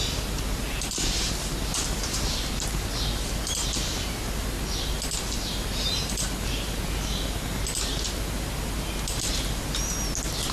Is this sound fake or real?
real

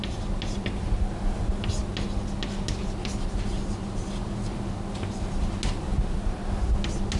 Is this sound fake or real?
real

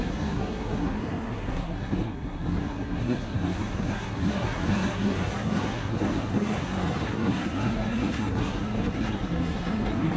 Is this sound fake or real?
fake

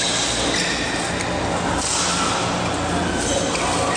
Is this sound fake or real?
real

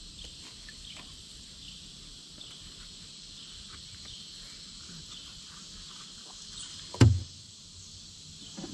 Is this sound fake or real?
real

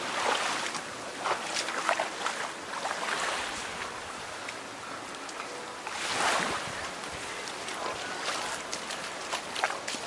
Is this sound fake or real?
real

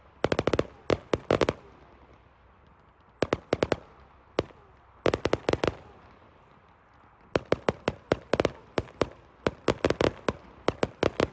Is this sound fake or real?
real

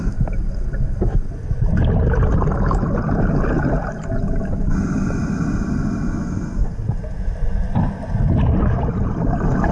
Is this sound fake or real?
real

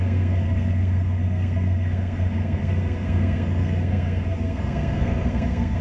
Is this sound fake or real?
fake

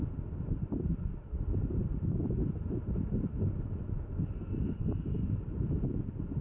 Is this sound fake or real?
real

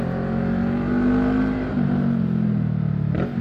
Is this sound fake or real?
real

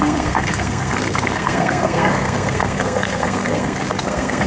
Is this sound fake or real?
fake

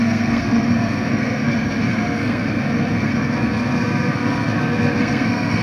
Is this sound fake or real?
fake